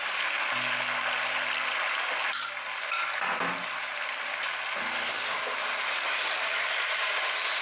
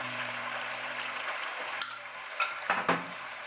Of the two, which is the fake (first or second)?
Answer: second